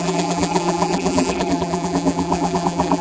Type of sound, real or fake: fake